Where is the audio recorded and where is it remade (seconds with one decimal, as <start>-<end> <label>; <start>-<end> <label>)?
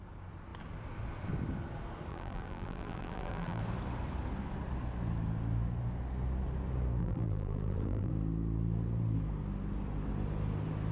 0.0-2.1 recorded; 2.1-3.6 remade; 3.6-7.0 recorded; 7.0-8.1 remade; 8.1-10.9 recorded